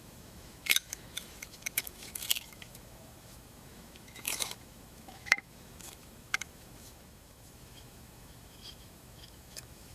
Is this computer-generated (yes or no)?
yes